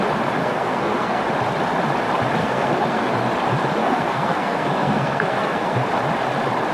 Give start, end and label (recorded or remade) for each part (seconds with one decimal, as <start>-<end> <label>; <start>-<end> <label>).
0.0-0.4 recorded; 0.4-1.2 remade; 1.2-2.4 recorded; 2.4-3.1 remade; 3.1-3.8 recorded; 3.8-5.9 remade; 5.9-6.7 recorded